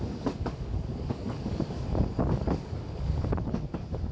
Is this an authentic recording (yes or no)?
no